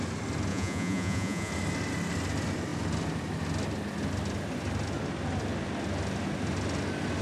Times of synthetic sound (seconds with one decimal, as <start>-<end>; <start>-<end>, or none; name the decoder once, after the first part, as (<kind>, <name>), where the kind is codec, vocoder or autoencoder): 0.5-1.5 (vocoder, Vocos)

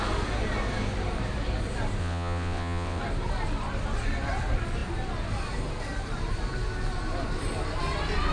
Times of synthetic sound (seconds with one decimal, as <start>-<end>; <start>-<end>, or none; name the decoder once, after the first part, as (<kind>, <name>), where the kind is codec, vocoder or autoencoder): 2.0-3.0 (vocoder, WaveNeXt)